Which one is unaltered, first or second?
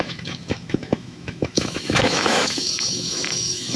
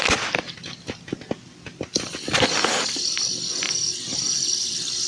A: second